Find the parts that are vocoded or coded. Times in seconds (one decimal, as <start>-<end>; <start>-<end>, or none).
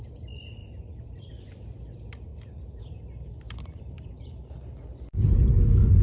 0.6-1.3; 2.3-4.8